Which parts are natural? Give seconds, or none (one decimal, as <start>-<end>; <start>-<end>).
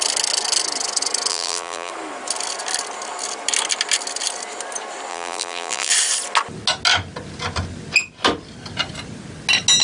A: 0.0-1.3; 1.9-5.1; 5.9-9.8